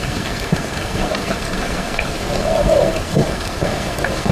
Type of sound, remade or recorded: remade